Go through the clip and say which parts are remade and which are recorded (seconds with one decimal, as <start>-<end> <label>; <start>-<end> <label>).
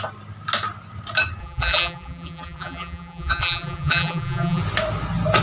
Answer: 0.0-1.4 recorded; 1.4-4.6 remade; 4.6-5.4 recorded